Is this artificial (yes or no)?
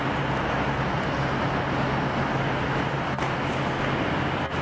no